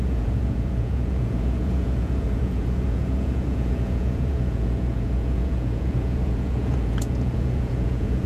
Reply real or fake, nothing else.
fake